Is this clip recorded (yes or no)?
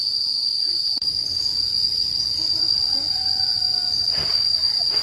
no